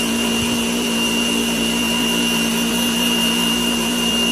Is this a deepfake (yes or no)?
yes